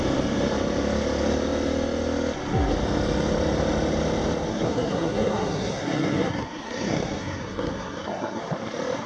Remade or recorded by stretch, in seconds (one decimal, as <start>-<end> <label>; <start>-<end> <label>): 0.0-4.5 recorded; 4.5-8.4 remade; 8.4-9.1 recorded